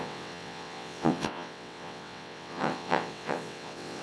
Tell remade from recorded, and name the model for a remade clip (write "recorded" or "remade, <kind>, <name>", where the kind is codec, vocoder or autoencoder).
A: remade, vocoder, WaveNeXt